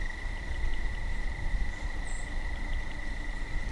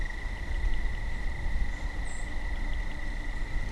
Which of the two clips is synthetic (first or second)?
first